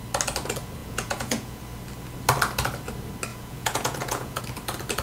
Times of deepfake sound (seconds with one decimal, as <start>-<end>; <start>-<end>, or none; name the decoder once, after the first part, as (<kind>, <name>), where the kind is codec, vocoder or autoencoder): 0.8-1.6 (vocoder, Vocos); 3.3-4.4